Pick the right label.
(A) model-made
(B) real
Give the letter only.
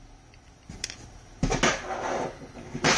B